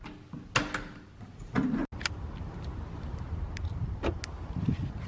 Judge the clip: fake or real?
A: real